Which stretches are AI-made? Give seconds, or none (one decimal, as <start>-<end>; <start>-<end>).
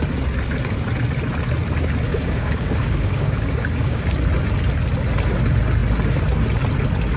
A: 2.1-4.0